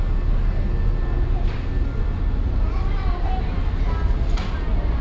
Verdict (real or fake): real